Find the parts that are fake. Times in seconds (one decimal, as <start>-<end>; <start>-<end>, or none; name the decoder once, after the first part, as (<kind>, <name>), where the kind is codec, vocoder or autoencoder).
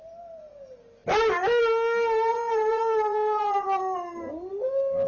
2.3-3.8 (vocoder, Vocos)